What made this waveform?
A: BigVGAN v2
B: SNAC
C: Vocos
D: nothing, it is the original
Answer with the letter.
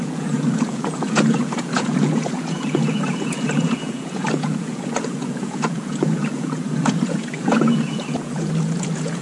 C